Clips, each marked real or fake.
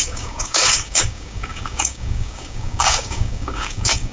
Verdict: fake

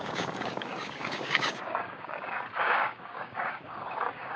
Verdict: fake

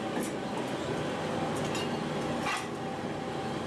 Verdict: real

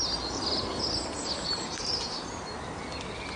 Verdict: real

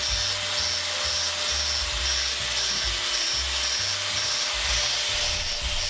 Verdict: real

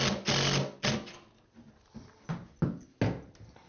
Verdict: real